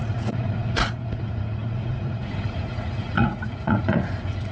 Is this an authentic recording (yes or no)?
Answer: no